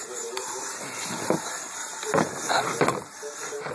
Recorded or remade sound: recorded